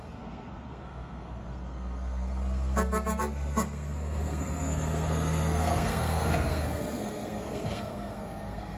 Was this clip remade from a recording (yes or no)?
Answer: yes